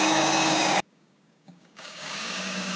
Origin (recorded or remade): remade